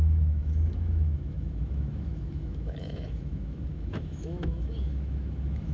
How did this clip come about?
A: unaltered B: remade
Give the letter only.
B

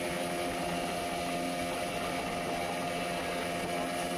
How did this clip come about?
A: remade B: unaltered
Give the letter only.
B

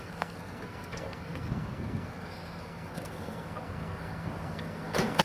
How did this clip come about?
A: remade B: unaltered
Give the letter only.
A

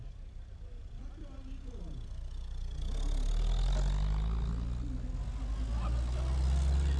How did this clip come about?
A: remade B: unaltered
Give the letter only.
B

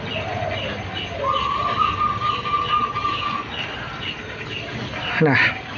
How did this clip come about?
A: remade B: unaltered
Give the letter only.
B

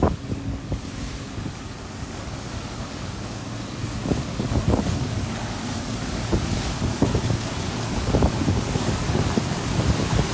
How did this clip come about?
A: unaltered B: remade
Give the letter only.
B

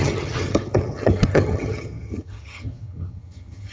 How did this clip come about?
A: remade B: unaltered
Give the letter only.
A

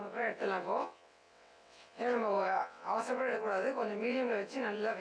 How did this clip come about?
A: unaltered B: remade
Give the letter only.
B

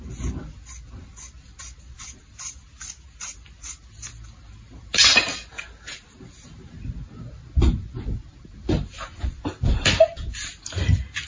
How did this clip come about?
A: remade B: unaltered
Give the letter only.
B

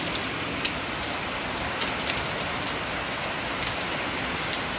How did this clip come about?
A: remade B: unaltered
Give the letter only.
B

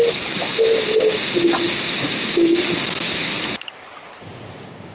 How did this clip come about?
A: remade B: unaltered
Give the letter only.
B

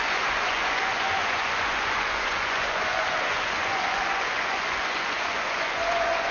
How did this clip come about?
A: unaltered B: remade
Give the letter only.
B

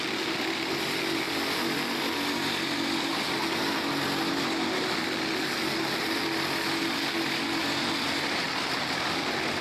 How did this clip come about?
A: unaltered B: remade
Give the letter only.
A